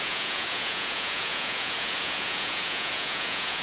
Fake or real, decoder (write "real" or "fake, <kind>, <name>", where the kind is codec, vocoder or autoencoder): fake, vocoder, Vocos